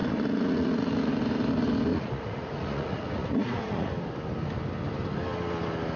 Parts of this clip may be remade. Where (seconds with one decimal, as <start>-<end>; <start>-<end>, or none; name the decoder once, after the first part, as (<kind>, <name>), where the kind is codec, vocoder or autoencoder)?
0.0-0.9 (vocoder, Vocos); 1.9-3.9